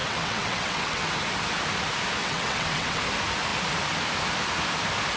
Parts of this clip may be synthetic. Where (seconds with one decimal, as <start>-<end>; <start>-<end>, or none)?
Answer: 0.0-1.1; 2.2-3.0